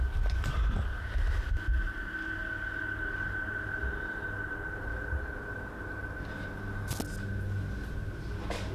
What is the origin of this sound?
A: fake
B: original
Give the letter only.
B